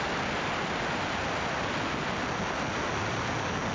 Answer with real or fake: real